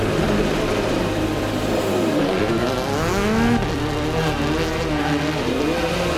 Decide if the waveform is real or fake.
real